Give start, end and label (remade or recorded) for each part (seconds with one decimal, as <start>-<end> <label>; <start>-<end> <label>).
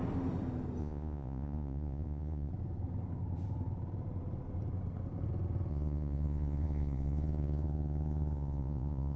0.0-0.8 recorded; 0.8-2.5 remade; 2.5-5.7 recorded; 5.7-9.2 remade